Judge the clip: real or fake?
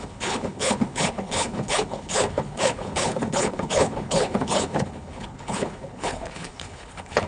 fake